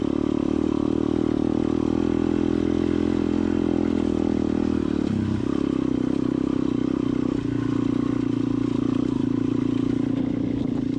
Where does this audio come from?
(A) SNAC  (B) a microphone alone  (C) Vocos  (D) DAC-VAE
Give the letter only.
B